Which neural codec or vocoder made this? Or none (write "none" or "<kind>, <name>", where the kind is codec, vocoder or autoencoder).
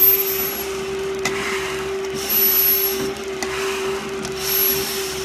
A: none